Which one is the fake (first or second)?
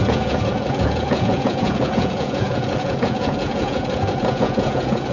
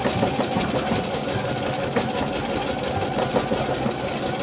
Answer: first